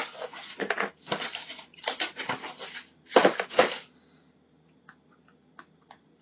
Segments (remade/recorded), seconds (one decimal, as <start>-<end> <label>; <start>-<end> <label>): 0.0-6.2 recorded